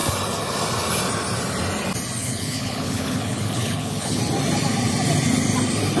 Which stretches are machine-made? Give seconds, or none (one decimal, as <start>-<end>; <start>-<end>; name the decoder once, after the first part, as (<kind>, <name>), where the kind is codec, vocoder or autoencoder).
2.2-4.2 (codec, HILCodec)